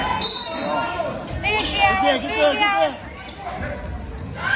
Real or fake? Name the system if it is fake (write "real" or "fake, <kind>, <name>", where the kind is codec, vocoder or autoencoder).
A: real